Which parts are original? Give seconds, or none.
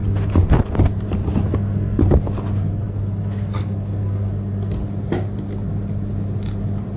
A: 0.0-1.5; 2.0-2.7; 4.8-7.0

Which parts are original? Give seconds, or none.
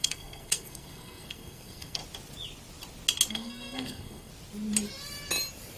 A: 2.0-3.3; 4.3-5.8